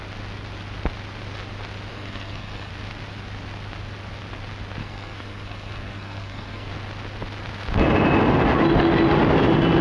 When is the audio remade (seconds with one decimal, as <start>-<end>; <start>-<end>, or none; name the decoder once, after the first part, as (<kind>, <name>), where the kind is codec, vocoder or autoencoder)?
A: 1.9-2.7 (codec, SNAC); 4.8-6.7

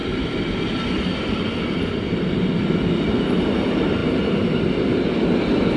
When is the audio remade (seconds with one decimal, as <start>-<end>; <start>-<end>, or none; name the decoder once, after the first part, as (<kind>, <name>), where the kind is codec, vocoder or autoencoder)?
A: none